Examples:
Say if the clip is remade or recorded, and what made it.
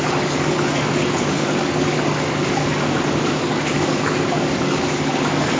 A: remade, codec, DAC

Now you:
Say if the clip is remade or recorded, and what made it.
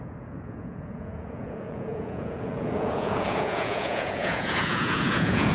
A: remade, vocoder, Vocos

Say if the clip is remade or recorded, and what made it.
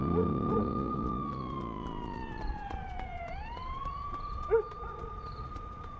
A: remade, vocoder, Vocos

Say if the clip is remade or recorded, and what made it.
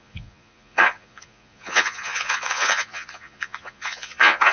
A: remade, vocoder, Vocos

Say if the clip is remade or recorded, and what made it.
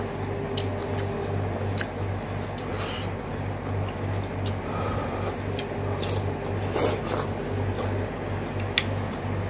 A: recorded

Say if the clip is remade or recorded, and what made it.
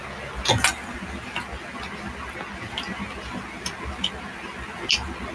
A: recorded